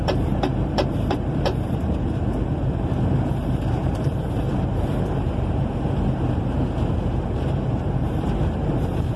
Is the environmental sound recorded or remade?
remade